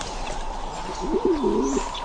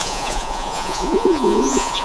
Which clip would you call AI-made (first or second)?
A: second